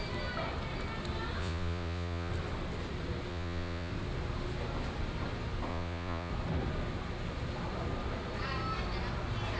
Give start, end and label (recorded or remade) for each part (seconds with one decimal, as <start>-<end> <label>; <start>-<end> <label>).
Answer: 0.0-1.4 recorded; 1.4-2.3 remade; 2.3-3.3 recorded; 3.3-3.9 remade; 3.9-5.7 recorded; 5.7-6.3 remade; 6.3-9.6 recorded

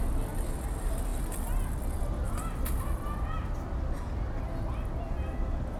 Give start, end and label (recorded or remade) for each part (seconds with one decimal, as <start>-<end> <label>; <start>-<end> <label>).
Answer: 0.0-5.8 recorded

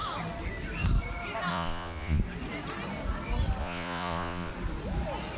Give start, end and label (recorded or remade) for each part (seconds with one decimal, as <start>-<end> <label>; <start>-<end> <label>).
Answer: 0.0-1.5 recorded; 1.5-2.2 remade; 2.2-3.6 recorded; 3.6-4.5 remade; 4.5-5.4 recorded

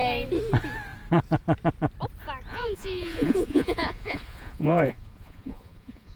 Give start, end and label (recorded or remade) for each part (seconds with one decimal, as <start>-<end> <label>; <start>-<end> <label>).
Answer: 0.0-2.5 recorded; 2.5-6.2 remade

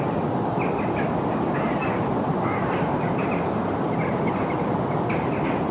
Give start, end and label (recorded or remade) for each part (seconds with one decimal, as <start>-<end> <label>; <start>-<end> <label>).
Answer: 0.0-5.7 recorded

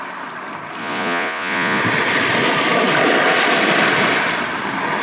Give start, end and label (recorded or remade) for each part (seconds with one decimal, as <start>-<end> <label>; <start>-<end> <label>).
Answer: 0.0-0.8 recorded; 0.8-1.8 remade; 1.8-5.0 recorded

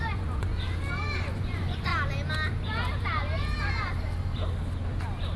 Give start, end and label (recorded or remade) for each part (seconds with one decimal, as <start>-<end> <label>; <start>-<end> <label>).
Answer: 0.0-0.5 remade; 0.5-1.3 recorded; 1.3-1.9 remade; 1.9-5.4 recorded

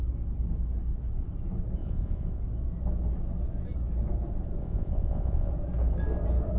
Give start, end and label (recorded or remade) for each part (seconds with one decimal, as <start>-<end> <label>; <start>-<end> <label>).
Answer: 0.0-1.8 recorded; 1.8-2.4 remade; 2.4-4.6 recorded; 4.6-5.5 remade; 5.5-6.6 recorded